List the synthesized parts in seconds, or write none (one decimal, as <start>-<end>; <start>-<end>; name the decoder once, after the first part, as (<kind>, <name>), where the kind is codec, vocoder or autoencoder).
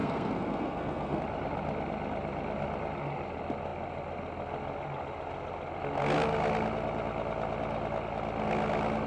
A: 0.0-1.2 (codec, SNAC)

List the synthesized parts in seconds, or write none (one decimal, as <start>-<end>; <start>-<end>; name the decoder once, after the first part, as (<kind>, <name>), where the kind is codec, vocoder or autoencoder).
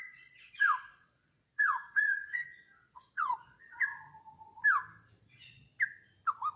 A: 0.0-3.9 (vocoder, Vocos); 5.2-5.7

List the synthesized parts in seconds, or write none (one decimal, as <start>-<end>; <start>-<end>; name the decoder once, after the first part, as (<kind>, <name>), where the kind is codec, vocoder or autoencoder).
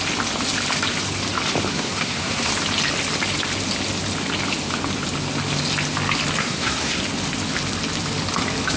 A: 1.7-2.5 (codec, SNAC); 6.4-7.0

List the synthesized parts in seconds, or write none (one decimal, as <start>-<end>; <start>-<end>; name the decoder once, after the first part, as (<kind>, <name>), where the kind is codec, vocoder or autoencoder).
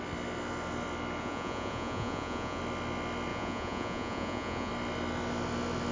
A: 1.2-2.6 (vocoder, Vocos); 3.3-4.7